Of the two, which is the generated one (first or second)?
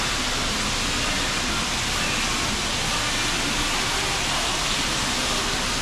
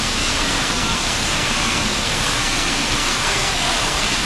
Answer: second